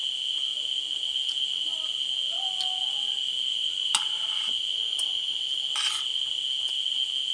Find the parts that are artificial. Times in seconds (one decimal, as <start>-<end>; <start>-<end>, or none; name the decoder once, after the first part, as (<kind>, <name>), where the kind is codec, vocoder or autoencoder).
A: 3.5-5.4 (vocoder, Vocos)